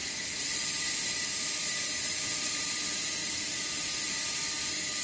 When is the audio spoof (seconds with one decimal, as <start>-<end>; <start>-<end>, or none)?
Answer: 0.0-2.7; 3.2-4.6